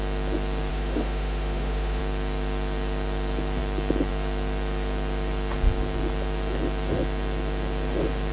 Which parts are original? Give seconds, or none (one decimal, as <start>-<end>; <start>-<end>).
0.0-0.7; 2.0-8.3